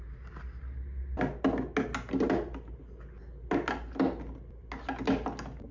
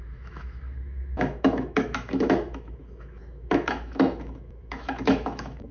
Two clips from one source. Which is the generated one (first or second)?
second